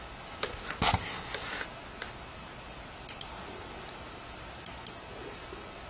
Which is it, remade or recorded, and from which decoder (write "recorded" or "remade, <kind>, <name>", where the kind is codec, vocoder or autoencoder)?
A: recorded